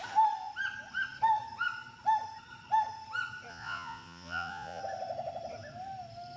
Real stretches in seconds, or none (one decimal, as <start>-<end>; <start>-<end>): 0.0-3.5; 4.8-6.4